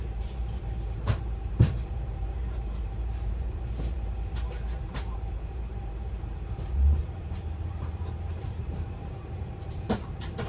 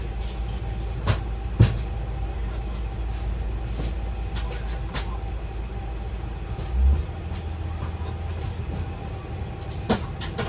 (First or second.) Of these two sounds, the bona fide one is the second